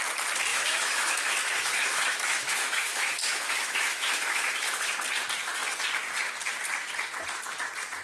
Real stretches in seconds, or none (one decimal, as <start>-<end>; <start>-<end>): 0.0-0.5; 4.9-8.0